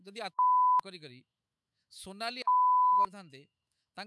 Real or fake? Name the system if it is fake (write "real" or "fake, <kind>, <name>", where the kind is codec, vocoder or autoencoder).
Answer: fake, autoencoder, DAC-VAE